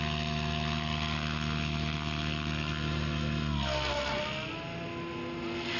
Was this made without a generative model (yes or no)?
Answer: yes